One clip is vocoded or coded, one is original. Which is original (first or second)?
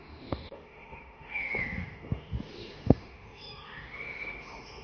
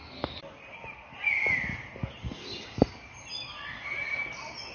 second